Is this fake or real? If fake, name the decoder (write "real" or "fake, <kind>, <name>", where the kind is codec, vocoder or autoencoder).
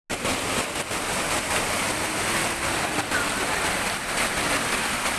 real